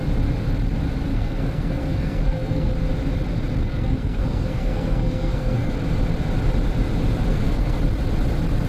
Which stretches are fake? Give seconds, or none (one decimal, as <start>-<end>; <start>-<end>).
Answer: 1.1-2.7; 3.6-5.7; 7.3-7.8